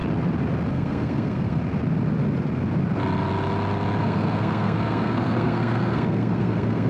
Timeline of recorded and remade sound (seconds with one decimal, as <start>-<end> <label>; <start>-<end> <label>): 0.0-0.7 recorded; 0.7-1.6 remade; 1.6-4.0 recorded; 4.0-6.9 remade